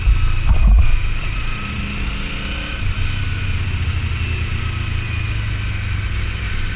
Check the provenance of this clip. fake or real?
real